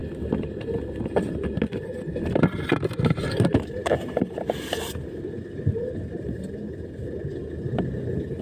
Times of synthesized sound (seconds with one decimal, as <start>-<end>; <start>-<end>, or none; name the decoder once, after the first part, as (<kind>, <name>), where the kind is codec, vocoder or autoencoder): 0.0-0.6 (vocoder, BigVGAN v2)